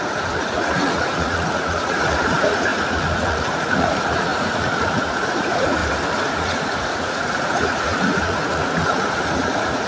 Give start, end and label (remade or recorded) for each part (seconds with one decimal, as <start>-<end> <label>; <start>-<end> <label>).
0.0-5.8 remade; 5.8-6.3 recorded; 6.3-9.9 remade